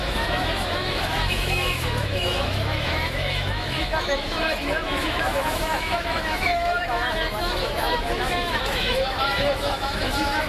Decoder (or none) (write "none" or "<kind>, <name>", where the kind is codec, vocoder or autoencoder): autoencoder, DAC-VAE